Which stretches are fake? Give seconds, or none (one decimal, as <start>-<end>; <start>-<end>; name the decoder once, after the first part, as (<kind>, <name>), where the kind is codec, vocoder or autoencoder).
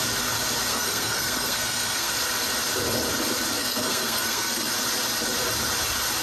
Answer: 0.7-2.1 (codec, SNAC); 3.6-4.7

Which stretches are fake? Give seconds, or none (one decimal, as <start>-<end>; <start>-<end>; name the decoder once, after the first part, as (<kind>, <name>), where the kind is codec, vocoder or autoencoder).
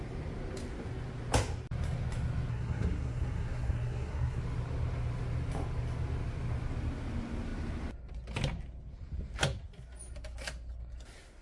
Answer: 2.5-4.4 (codec, SNAC)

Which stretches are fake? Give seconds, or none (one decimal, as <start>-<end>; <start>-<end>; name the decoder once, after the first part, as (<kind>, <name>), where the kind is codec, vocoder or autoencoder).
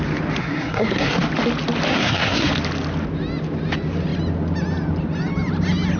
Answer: 0.4-1.2 (codec, SNAC); 1.9-2.5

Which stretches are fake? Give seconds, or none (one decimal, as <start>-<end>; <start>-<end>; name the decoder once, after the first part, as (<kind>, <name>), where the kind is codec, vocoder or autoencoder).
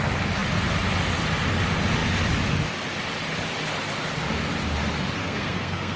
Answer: 5.2-6.0 (codec, SNAC)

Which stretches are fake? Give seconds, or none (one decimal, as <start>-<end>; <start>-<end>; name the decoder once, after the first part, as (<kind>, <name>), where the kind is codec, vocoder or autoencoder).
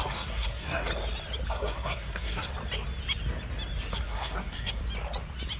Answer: 0.0-0.9 (codec, SNAC); 1.5-2.5; 3.9-4.8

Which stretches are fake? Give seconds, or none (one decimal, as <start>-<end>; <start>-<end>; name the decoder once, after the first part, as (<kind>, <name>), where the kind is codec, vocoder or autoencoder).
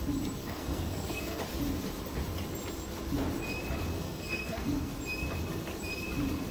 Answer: 0.4-1.4 (codec, SNAC); 3.9-4.9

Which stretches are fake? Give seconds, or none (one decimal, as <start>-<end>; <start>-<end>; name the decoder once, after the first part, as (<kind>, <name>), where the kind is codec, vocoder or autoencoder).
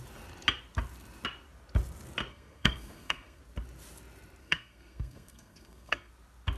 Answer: 2.3-3.4 (codec, SNAC); 4.4-6.1